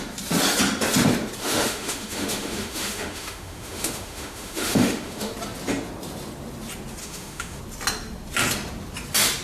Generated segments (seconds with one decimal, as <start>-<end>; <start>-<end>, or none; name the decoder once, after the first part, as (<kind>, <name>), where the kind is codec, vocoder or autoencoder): 1.4-5.3 (autoencoder, DAC-VAE); 7.0-7.6